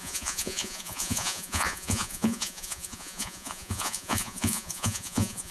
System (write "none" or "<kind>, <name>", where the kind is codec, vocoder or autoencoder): vocoder, Vocos